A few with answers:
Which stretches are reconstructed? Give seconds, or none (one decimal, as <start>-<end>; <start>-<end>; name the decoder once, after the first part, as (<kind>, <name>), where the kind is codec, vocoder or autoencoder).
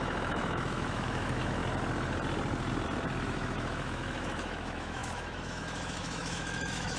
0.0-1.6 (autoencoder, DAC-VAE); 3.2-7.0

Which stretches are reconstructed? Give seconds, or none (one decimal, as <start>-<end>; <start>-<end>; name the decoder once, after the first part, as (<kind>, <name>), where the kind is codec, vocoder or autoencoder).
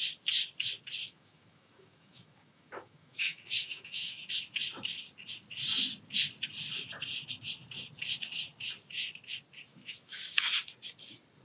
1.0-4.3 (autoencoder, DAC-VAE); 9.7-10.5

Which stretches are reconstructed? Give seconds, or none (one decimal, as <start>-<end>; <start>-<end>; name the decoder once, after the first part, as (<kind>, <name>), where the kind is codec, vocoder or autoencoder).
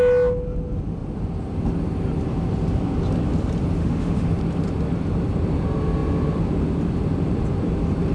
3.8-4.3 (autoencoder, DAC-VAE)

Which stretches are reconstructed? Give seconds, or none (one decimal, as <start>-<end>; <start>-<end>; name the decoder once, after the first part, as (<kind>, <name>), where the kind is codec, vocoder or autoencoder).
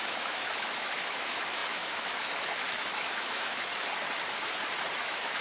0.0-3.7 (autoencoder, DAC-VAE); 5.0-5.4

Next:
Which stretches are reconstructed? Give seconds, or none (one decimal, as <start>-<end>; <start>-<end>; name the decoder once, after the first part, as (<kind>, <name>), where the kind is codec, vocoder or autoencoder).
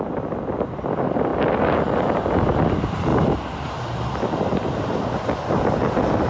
none